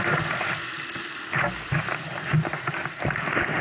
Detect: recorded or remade recorded